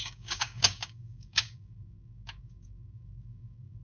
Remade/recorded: remade